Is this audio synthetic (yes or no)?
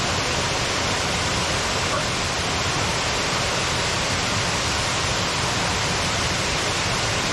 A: no